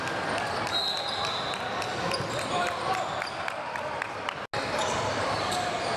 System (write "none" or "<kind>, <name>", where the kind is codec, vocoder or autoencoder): none